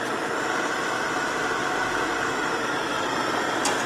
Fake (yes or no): no